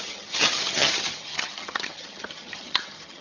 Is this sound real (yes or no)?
no